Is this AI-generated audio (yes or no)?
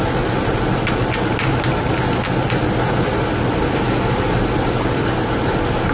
no